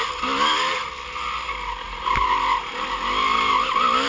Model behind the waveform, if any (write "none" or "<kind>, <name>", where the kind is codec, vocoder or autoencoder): none